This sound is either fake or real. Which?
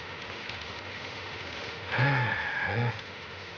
fake